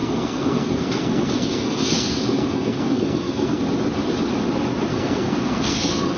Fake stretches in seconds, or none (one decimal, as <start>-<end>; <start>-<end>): 0.0-3.6; 4.9-6.2